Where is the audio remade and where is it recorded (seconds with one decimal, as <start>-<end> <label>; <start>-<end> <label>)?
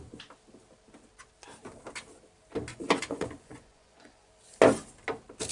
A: 0.0-2.7 recorded; 2.7-4.3 remade; 4.3-5.5 recorded